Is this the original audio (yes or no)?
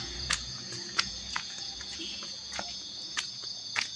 no